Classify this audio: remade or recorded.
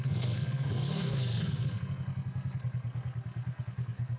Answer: remade